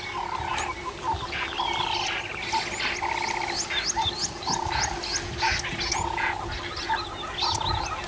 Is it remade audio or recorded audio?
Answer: recorded